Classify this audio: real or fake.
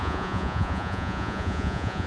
fake